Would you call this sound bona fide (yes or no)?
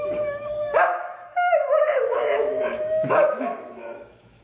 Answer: no